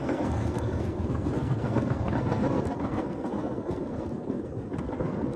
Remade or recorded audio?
remade